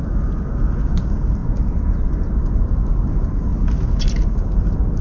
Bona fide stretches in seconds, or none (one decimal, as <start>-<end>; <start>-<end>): 0.0-5.0